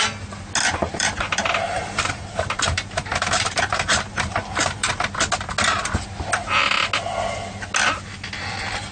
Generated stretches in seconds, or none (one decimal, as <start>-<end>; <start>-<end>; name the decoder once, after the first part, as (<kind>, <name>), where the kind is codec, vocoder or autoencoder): 0.8-4.9 (vocoder, BigVGAN v2)